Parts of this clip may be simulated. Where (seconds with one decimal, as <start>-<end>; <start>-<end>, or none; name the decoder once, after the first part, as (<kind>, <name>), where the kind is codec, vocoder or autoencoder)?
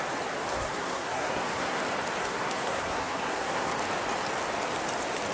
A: 0.5-1.8 (codec, SNAC); 2.2-3.7